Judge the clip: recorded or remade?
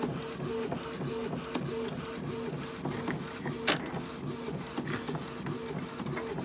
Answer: recorded